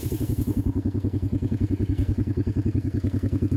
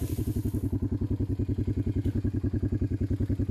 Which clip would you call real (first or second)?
second